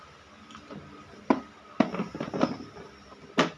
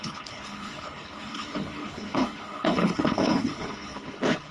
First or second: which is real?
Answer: first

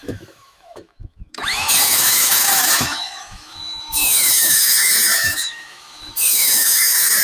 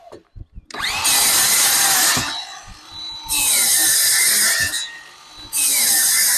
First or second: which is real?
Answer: second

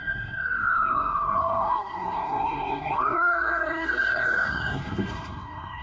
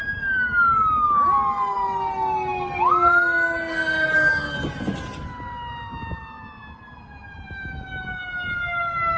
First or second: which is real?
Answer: second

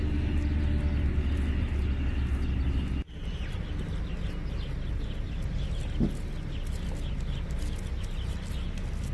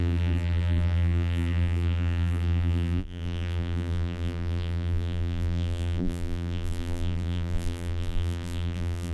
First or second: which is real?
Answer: first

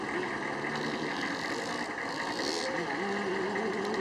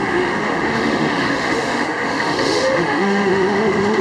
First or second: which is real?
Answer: first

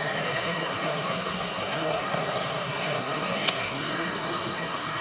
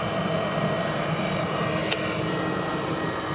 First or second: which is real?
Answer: second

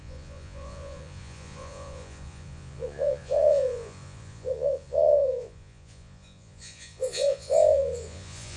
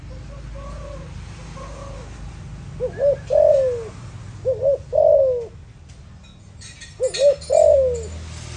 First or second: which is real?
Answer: second